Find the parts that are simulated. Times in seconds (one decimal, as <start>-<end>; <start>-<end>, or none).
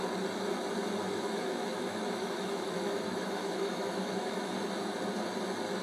1.0-4.5